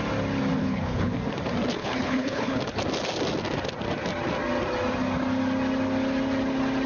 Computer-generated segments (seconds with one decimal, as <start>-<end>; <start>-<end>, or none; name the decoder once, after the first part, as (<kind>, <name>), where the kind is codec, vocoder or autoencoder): 0.6-1.1 (codec, HILCodec); 1.8-2.6